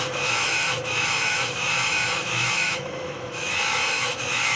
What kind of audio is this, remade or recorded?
remade